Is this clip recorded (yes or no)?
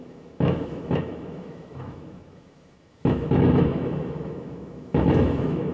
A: no